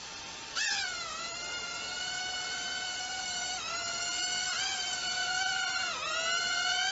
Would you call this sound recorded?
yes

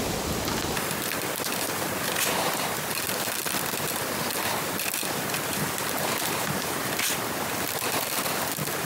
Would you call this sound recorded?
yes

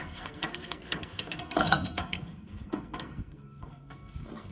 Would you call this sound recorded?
no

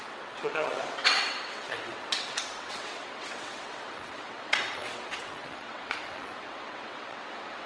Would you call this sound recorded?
no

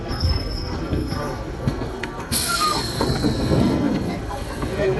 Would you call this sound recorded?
no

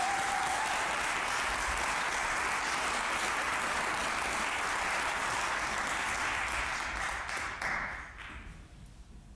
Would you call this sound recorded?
yes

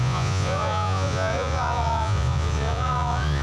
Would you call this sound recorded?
no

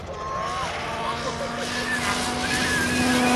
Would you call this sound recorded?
yes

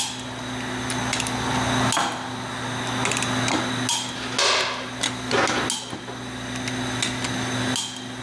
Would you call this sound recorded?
yes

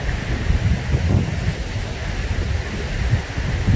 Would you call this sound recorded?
yes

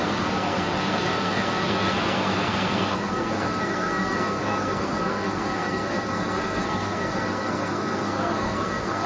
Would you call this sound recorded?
no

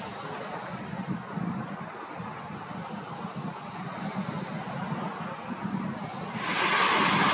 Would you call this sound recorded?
yes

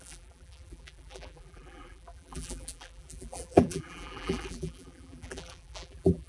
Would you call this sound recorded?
no